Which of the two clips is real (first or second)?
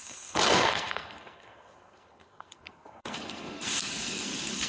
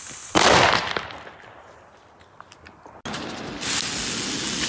second